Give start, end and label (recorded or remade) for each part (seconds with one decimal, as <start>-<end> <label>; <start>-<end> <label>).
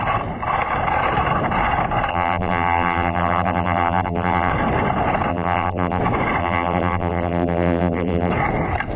0.0-2.1 recorded; 2.1-4.5 remade; 4.5-5.3 recorded; 5.3-6.0 remade; 6.0-6.4 recorded; 6.4-8.3 remade; 8.3-9.0 recorded